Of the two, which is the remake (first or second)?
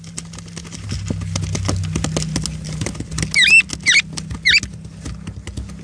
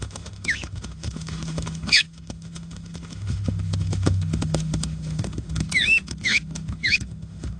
second